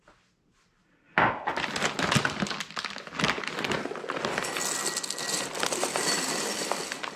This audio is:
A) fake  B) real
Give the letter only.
B